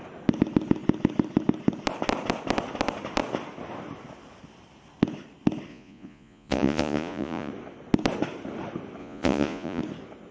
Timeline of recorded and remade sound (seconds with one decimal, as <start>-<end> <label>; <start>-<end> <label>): 0.0-5.7 recorded; 5.7-7.5 remade; 7.5-9.0 recorded; 9.0-9.8 remade; 9.8-10.3 recorded